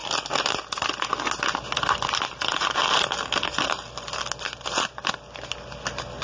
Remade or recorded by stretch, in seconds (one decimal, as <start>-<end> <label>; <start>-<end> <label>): 0.0-6.2 recorded